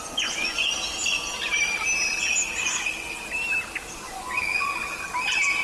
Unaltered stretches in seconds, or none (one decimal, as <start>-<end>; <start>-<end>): 0.7-4.1; 4.8-5.6